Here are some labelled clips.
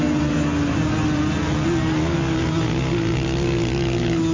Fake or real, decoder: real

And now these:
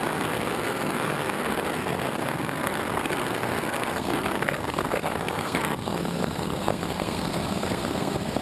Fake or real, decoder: fake, codec, SNAC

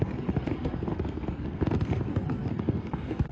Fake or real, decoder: fake, codec, SNAC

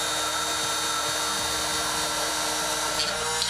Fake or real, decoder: real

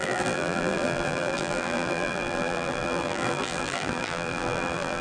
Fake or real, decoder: fake, vocoder, BigVGAN v2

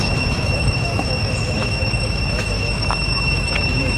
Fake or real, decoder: fake, autoencoder, DAC-VAE